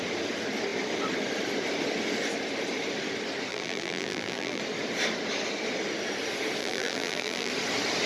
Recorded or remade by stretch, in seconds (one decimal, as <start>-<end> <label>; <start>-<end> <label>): 0.0-3.5 recorded; 3.5-4.6 remade; 4.6-6.6 recorded; 6.6-7.5 remade; 7.5-8.1 recorded